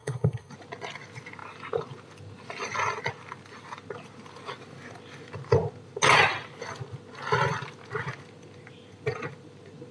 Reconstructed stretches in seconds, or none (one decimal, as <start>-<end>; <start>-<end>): 0.0-0.5